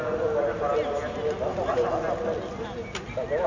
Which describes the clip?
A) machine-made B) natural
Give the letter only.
B